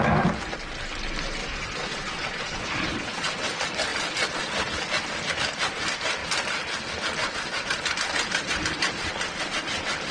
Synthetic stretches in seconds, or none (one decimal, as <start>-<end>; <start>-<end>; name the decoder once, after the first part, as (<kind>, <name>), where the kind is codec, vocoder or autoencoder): 1.4-3.4 (vocoder, Vocos)